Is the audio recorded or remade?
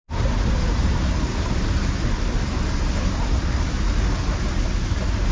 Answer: recorded